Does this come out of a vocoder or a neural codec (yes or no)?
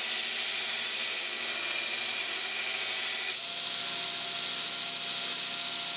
no